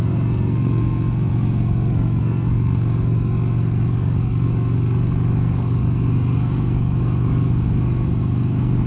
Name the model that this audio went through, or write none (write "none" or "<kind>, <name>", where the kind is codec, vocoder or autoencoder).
codec, SNAC